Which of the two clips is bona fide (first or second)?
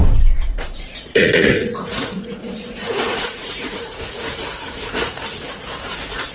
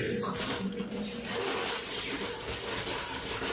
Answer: second